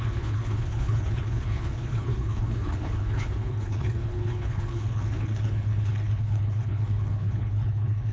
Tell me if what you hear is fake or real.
fake